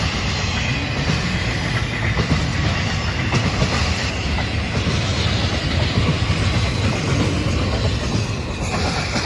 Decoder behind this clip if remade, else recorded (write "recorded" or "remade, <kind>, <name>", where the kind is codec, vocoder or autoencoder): recorded